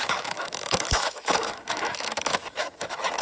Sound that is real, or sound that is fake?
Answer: fake